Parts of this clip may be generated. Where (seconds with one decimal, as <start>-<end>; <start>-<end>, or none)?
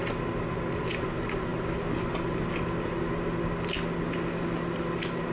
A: none